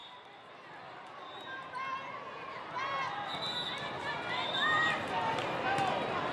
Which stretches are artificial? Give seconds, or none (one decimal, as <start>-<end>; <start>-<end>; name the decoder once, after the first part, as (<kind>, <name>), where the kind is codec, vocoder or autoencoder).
none